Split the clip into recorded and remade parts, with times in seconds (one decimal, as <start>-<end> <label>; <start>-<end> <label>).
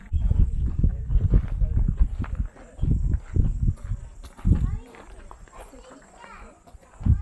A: 0.0-1.1 remade; 1.1-5.2 recorded; 5.2-7.2 remade